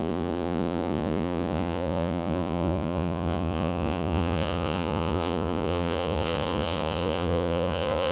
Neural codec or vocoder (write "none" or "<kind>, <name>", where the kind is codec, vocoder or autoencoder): vocoder, Vocos